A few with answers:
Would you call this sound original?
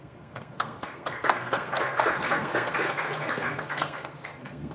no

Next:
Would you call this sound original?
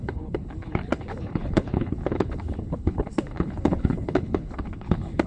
no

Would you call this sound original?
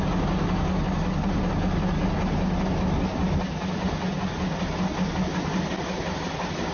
yes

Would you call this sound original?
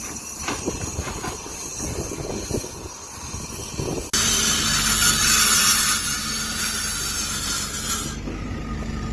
yes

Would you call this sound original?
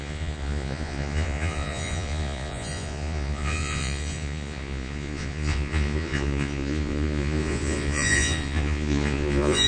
no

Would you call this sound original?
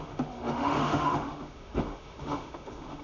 no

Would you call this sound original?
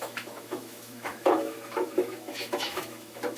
no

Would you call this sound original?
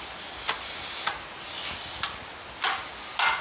yes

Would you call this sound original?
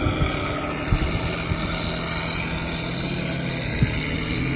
yes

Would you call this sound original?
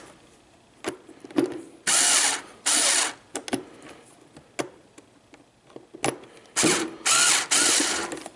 yes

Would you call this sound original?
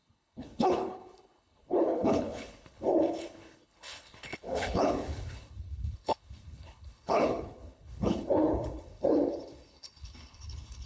no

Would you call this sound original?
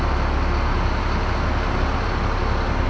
yes